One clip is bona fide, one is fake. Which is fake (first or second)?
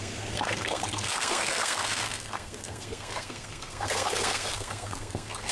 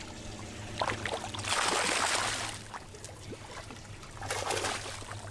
first